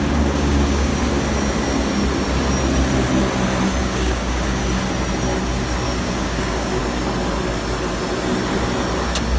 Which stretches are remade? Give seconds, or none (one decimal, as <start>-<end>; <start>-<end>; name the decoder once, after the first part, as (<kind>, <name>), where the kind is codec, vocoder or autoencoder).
0.0-0.9 (codec, DAC); 3.8-4.6; 6.0-6.8